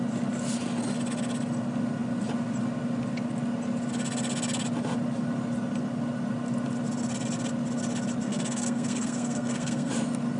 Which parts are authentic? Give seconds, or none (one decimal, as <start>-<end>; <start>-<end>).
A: 0.0-8.3; 9.9-10.4